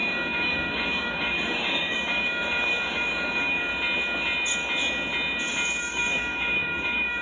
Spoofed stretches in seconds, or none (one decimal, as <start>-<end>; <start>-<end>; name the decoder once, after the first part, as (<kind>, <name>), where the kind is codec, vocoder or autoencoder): 0.0-3.7 (codec, DAC); 5.8-7.2